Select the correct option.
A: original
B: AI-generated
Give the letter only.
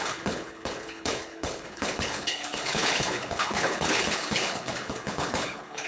B